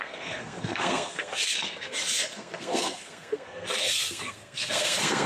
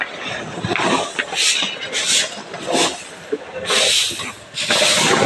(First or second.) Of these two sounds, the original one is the second